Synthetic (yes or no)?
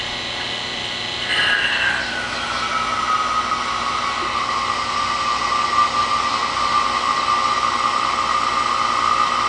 no